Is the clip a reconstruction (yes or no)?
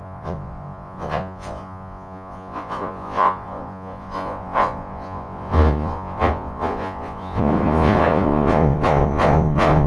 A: yes